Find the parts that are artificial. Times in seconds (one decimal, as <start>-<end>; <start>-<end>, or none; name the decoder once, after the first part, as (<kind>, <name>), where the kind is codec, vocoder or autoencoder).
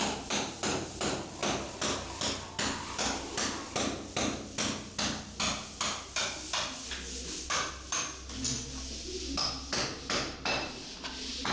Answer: none